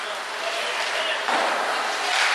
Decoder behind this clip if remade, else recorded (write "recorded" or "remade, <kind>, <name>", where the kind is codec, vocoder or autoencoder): remade, vocoder, BigVGAN v2